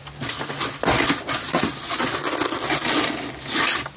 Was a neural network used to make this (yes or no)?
no